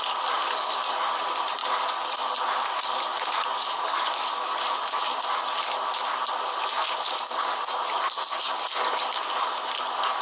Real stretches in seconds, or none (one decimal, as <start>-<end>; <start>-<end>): 0.0-10.2